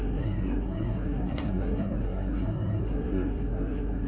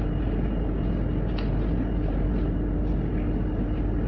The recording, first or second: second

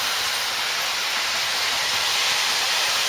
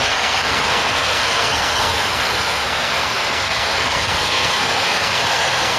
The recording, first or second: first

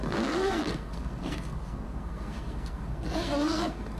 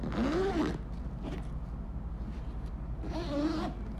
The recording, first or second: second